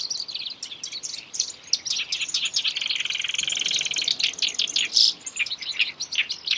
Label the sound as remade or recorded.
recorded